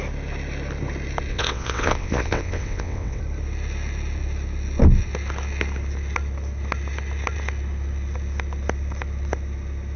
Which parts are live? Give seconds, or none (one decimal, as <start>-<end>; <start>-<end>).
0.0-1.3; 3.2-10.0